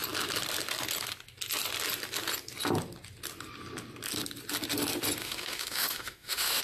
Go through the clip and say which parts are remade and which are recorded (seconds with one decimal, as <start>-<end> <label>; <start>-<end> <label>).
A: 0.0-5.2 recorded; 5.2-6.6 remade